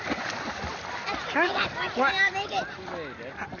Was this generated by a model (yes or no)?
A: no